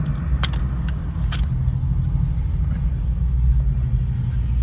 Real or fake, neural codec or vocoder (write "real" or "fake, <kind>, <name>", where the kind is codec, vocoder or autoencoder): real